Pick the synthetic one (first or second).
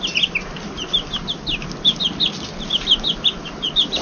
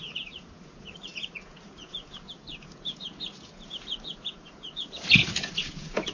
second